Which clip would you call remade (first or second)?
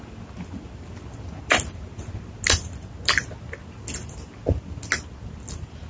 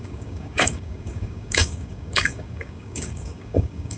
second